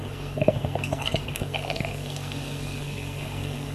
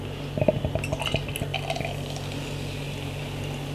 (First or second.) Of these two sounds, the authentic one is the second